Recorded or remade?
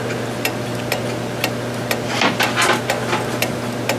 recorded